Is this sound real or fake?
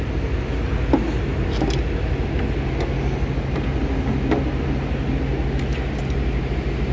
real